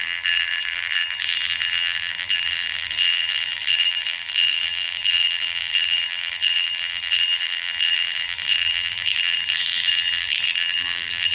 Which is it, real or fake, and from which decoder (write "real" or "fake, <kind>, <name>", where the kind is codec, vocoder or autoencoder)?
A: fake, vocoder, BigVGAN v2